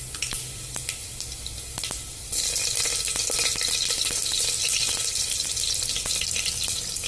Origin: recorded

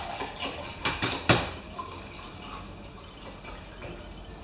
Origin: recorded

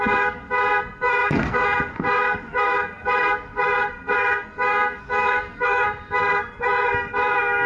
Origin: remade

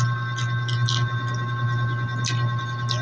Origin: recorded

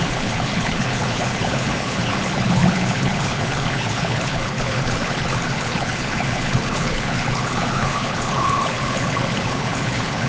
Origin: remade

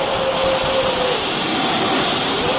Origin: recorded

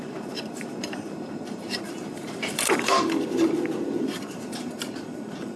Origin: remade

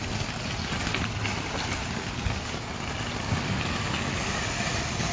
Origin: recorded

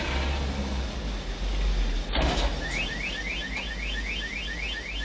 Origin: recorded